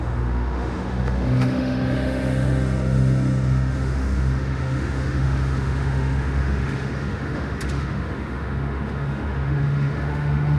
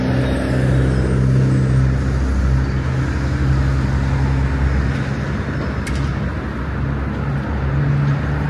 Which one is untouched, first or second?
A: second